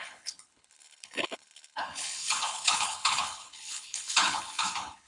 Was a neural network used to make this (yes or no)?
yes